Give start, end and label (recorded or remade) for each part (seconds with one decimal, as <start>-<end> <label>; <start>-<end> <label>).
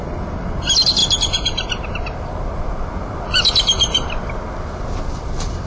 0.0-5.7 recorded